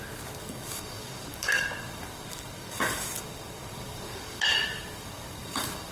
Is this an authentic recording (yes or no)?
no